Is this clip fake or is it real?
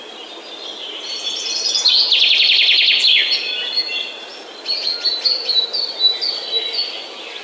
real